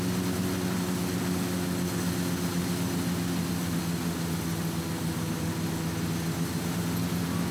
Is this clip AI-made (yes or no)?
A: no